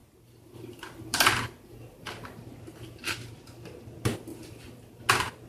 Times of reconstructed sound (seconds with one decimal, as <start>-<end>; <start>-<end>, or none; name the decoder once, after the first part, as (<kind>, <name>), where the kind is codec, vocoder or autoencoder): 0.0-3.3 (vocoder, BigVGAN v2); 4.3-5.0